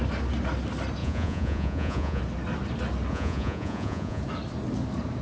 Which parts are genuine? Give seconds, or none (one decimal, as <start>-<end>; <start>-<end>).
0.0-1.0; 2.2-3.1; 4.2-5.2